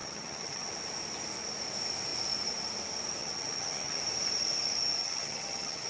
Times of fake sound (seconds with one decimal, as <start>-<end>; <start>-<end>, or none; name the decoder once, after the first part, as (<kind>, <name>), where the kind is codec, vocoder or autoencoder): 0.0-0.7 (vocoder, HiFi-GAN); 3.2-4.0; 5.0-5.9